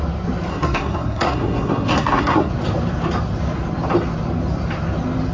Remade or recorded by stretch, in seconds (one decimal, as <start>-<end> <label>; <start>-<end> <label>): 0.0-0.5 recorded; 0.5-2.5 remade; 2.5-5.3 recorded